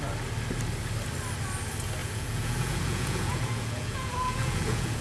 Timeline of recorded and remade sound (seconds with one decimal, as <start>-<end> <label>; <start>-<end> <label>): 0.0-2.0 recorded; 2.0-5.0 remade